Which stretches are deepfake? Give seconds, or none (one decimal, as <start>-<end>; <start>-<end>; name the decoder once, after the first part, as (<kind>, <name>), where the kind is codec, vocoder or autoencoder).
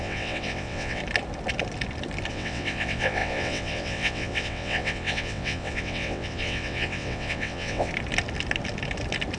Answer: 0.0-1.0 (vocoder, WaveNeXt); 2.3-7.9